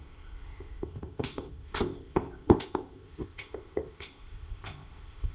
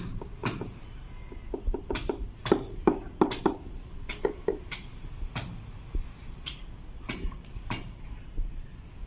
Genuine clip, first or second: second